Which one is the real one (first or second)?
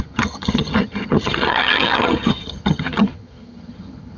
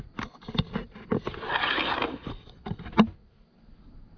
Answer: second